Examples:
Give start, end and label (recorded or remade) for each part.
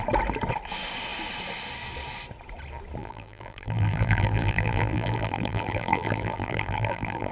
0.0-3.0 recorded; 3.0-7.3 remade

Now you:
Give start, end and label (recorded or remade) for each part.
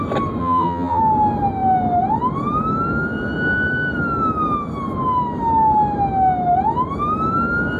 0.0-0.4 recorded; 0.4-1.0 remade; 1.0-7.8 recorded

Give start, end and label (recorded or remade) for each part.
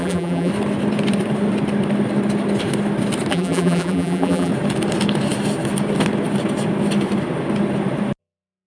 0.0-0.5 remade; 0.5-3.3 recorded; 3.3-4.5 remade; 4.5-8.2 recorded; 8.2-8.7 remade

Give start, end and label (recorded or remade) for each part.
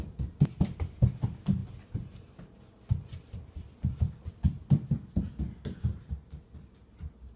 0.0-5.9 recorded; 5.9-7.4 remade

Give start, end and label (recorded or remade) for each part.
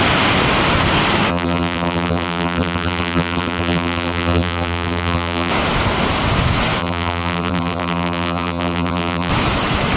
0.0-1.3 recorded; 1.3-5.5 remade; 5.5-6.8 recorded; 6.8-9.3 remade; 9.3-10.0 recorded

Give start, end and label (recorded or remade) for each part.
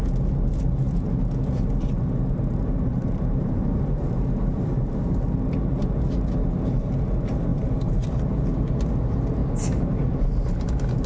0.0-2.9 recorded; 2.9-5.0 remade; 5.0-7.5 recorded; 7.5-8.2 remade; 8.2-9.4 recorded; 9.4-10.5 remade; 10.5-11.1 recorded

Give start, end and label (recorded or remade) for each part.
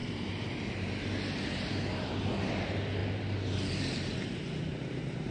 0.0-1.0 remade; 1.0-3.0 recorded; 3.0-5.3 remade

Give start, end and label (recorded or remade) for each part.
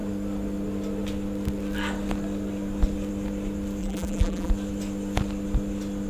0.0-3.8 recorded; 3.8-4.5 remade; 4.5-6.1 recorded